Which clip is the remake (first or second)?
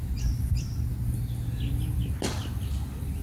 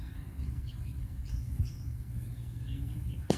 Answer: second